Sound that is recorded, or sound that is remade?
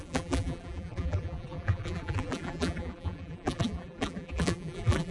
remade